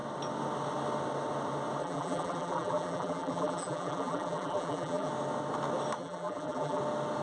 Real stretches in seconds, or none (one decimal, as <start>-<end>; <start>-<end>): 0.0-1.8; 5.1-6.0; 6.8-7.2